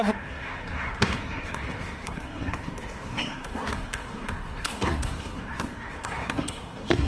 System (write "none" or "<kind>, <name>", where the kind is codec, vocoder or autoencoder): codec, SNAC